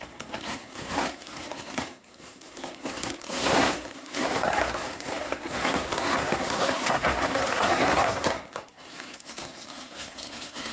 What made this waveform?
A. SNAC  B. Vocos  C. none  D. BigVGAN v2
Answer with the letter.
A